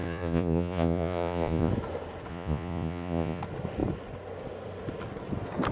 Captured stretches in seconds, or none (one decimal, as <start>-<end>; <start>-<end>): 1.7-2.3; 3.4-5.7